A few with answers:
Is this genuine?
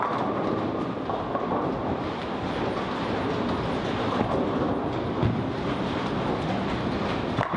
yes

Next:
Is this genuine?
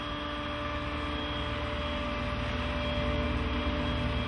yes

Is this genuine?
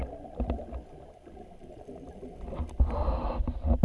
yes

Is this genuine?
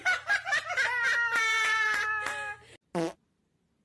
yes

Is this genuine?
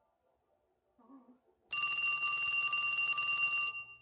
yes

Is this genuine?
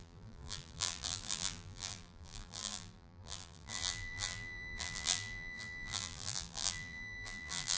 no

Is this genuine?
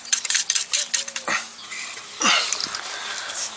yes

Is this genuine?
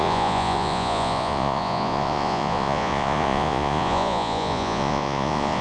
no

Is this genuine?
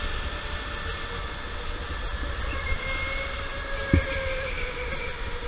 yes